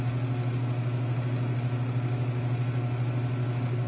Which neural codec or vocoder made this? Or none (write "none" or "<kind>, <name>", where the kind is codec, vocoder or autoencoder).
none